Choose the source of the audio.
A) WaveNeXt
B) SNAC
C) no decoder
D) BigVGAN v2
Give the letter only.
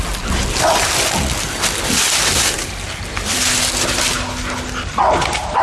C